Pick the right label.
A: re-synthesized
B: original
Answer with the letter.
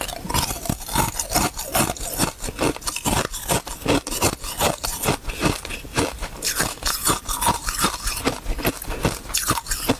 B